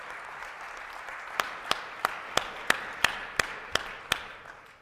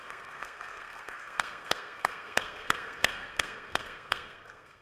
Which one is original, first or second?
first